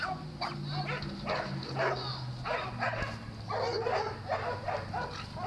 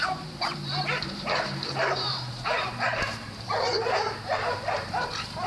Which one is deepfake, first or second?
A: second